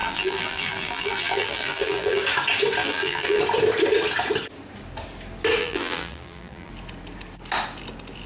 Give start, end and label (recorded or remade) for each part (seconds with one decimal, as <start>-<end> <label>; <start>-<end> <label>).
0.0-2.2 remade; 2.2-2.8 recorded; 2.8-3.4 remade; 3.4-5.6 recorded; 5.6-6.7 remade; 6.7-8.3 recorded